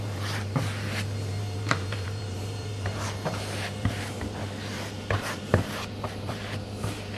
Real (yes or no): no